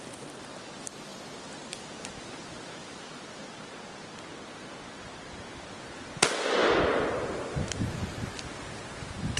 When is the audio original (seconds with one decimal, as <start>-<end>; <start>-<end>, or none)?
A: 0.0-9.4

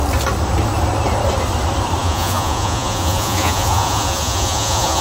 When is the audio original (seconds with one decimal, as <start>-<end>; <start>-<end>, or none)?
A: 0.0-2.0

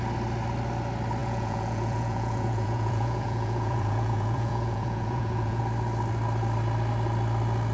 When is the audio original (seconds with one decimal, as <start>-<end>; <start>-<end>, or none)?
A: 0.0-1.2; 5.6-7.7

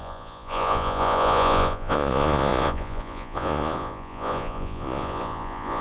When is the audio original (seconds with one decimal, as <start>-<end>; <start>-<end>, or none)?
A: none

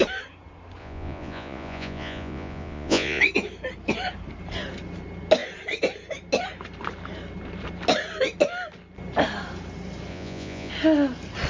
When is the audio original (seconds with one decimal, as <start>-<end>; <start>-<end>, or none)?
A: 0.0-0.8; 3.2-10.1; 10.7-11.5

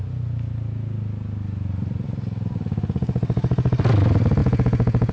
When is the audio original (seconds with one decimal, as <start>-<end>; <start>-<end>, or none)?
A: 0.0-4.4

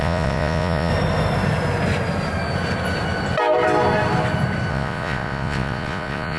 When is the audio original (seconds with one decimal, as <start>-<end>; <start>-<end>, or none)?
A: 0.9-4.7

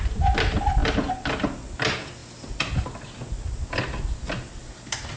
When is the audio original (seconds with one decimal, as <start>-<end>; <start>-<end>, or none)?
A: 0.0-5.2